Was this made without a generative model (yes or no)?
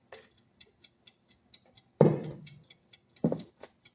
yes